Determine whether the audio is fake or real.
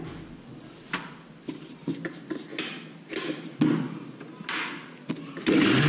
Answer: real